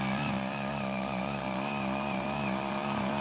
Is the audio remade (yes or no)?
yes